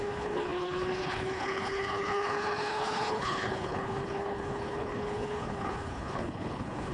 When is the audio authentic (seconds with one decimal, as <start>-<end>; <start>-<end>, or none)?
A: none